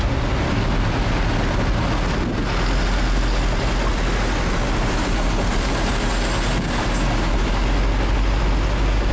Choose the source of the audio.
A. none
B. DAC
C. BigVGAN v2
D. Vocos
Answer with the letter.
A